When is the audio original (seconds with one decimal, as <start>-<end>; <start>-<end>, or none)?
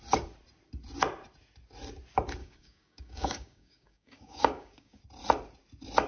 0.0-2.4; 5.0-6.1